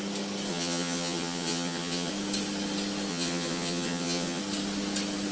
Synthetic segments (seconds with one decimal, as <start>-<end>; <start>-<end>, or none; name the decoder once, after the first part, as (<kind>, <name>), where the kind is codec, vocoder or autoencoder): 0.5-2.1 (vocoder, HiFi-GAN); 3.1-4.4

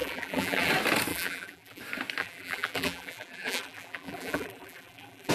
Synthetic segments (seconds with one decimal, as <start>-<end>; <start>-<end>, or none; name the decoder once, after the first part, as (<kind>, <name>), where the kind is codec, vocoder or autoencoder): 0.0-0.7 (vocoder, BigVGAN v2); 1.1-1.8; 2.2-5.3